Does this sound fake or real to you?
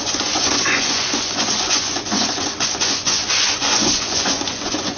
fake